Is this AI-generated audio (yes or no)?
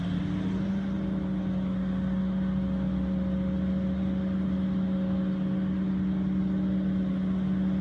no